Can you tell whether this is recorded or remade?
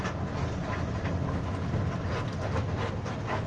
recorded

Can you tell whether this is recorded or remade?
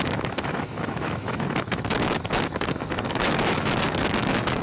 remade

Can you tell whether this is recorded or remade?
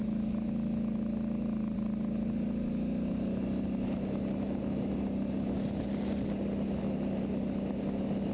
recorded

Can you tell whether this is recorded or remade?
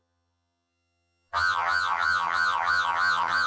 remade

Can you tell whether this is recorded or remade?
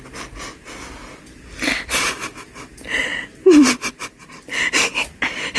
recorded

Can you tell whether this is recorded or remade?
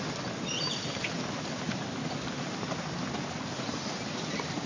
recorded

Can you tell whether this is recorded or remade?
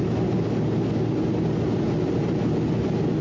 recorded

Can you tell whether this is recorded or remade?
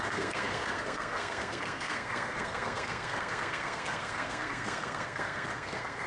remade